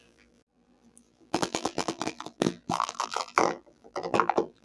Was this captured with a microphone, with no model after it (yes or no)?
no